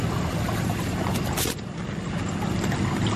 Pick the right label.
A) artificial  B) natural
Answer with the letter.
B